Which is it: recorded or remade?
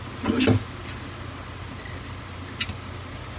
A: recorded